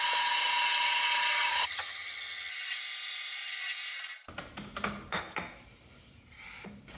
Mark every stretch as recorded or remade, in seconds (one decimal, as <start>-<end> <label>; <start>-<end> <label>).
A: 0.0-1.5 recorded; 1.5-2.5 remade; 2.5-7.0 recorded